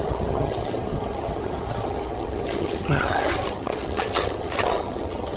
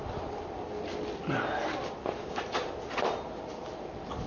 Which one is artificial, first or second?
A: first